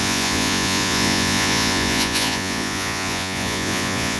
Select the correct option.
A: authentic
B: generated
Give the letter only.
B